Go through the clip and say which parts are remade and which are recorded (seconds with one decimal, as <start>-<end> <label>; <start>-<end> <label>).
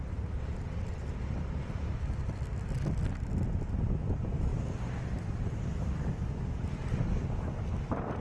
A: 0.0-8.2 recorded